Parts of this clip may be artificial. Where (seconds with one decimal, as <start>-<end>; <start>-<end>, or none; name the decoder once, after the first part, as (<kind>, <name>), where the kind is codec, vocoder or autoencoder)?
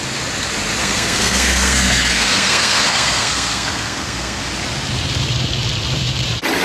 0.8-4.4 (codec, SNAC)